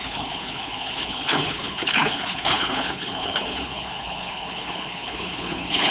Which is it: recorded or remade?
remade